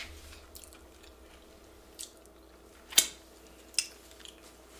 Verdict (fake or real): real